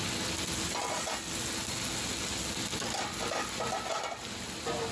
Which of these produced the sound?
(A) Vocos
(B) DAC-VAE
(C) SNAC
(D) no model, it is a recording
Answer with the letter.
D